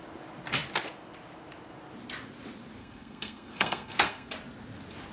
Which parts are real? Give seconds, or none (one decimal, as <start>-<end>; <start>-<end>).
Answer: 0.0-2.8; 4.3-5.1